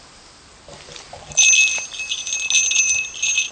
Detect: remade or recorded recorded